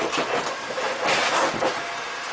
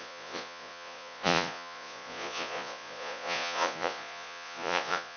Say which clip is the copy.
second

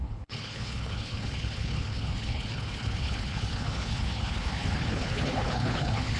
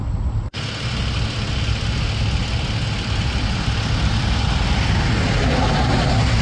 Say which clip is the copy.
first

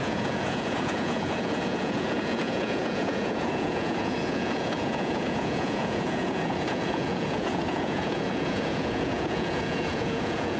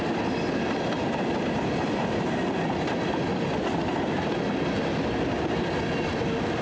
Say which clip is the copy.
first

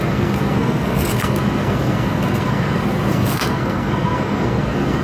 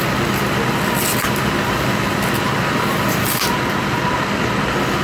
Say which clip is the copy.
first